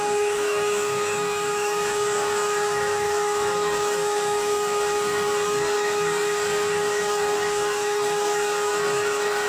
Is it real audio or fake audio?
fake